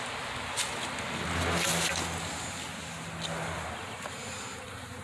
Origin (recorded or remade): recorded